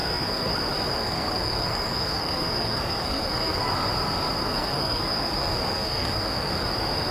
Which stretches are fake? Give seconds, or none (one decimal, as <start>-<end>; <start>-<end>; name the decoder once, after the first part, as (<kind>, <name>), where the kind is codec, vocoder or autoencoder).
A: 0.0-0.5 (codec, SNAC); 1.0-3.6; 4.4-6.5